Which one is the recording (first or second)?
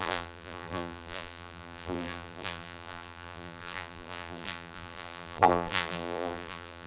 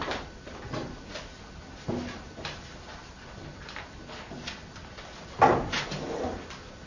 second